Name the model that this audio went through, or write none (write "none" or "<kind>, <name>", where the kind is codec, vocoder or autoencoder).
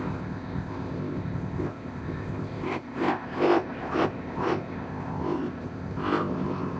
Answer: codec, ZipCodec